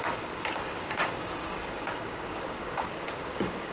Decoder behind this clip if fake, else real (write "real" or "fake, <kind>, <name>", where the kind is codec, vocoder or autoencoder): fake, codec, DAC